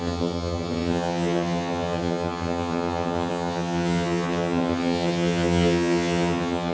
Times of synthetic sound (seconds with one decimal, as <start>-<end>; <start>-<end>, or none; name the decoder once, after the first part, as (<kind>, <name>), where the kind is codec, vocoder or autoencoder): 0.0-6.7 (vocoder, HiFi-GAN)